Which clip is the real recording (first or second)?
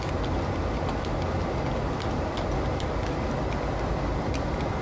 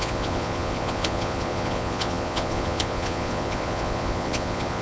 first